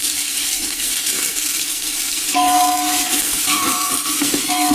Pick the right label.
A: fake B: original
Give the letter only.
A